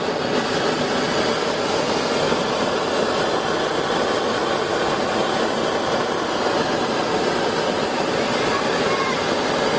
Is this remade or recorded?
remade